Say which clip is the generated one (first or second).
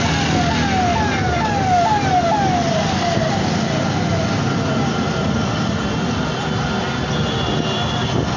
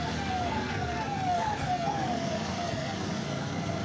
second